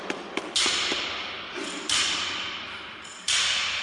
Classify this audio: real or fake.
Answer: real